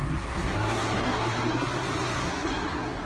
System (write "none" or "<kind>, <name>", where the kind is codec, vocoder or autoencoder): codec, SNAC